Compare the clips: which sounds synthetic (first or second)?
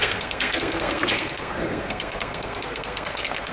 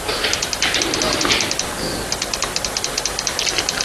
first